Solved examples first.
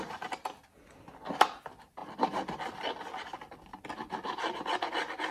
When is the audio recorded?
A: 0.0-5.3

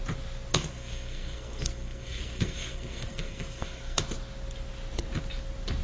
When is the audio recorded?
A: 0.0-0.5; 4.0-5.8

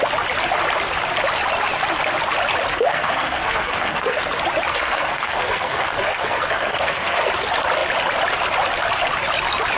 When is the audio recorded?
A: 0.0-2.7; 4.3-4.7; 7.3-9.8

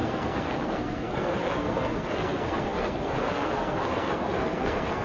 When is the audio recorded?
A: none

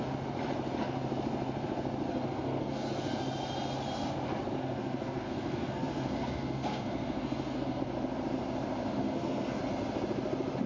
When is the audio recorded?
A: 0.0-2.1; 3.2-4.6; 7.8-9.0; 9.6-10.7

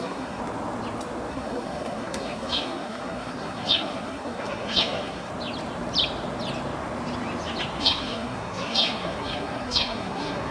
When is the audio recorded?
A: 0.4-1.3; 5.3-7.8

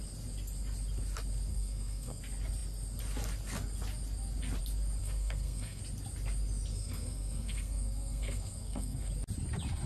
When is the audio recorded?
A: 0.0-1.5; 2.2-5.0; 5.8-6.7; 9.1-9.9

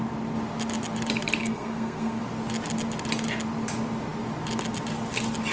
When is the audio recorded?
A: 0.0-1.4; 2.2-5.5